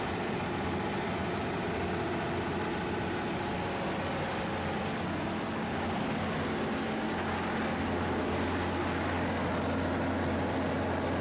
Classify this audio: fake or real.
real